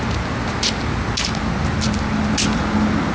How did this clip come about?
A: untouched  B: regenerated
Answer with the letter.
A